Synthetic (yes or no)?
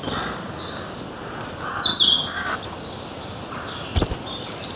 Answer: no